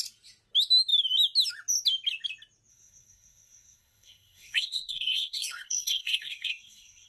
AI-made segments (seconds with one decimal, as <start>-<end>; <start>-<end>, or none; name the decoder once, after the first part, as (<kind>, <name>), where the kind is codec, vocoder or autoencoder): 2.7-7.1 (codec, SNAC)